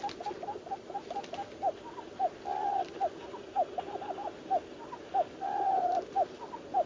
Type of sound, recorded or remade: recorded